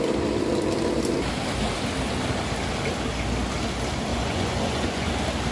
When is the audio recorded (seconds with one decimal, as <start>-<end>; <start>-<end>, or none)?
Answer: 0.0-4.1; 5.1-5.5